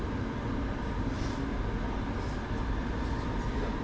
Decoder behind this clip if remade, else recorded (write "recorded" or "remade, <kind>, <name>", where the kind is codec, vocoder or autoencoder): recorded